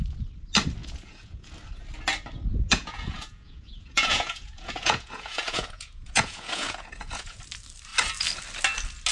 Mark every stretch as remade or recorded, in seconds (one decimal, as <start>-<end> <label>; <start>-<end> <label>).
0.0-0.8 recorded; 0.8-1.5 remade; 1.5-2.5 recorded; 2.5-7.4 remade; 7.4-9.1 recorded